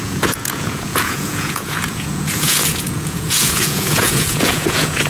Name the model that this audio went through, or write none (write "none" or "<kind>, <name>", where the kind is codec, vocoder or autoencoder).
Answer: vocoder, Vocos